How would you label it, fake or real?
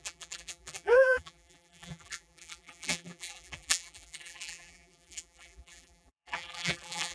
fake